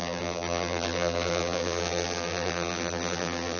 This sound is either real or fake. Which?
fake